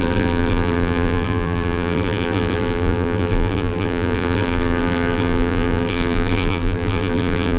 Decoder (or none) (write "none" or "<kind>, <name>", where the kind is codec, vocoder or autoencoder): vocoder, BigVGAN v2